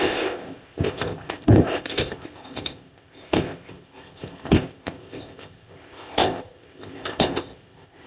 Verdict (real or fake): fake